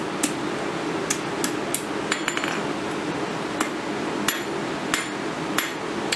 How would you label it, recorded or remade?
recorded